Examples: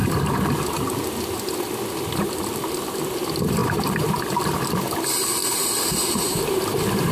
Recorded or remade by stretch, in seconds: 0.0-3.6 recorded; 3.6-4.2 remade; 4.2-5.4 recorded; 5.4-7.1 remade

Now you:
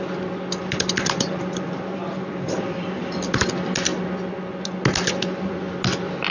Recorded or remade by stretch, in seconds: 0.0-0.6 recorded; 0.6-3.4 remade; 3.4-6.3 recorded

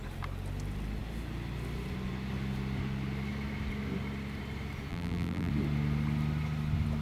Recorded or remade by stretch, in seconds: 0.0-4.9 recorded; 4.9-5.5 remade; 5.5-7.0 recorded

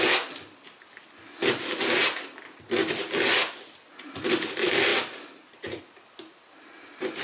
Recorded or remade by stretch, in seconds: 0.0-4.9 recorded; 4.9-5.8 remade; 5.8-7.2 recorded

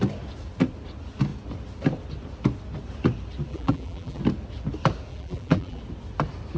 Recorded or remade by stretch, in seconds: 0.0-3.5 recorded; 3.5-4.2 remade; 4.2-5.1 recorded; 5.1-5.8 remade; 5.8-6.6 recorded

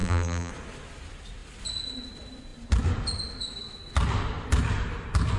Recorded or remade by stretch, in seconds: 0.0-0.5 remade; 0.5-5.4 recorded

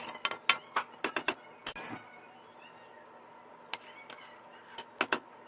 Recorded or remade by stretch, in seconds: 0.0-5.5 recorded

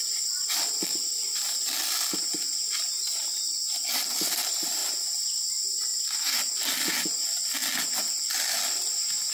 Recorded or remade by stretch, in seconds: 0.0-2.6 remade; 2.6-3.3 recorded; 3.3-4.8 remade; 4.8-5.5 recorded; 5.5-5.9 remade; 5.9-8.5 recorded; 8.5-9.3 remade